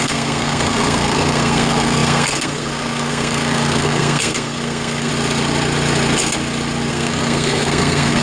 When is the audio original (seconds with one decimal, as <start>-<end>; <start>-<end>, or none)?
5.1-6.9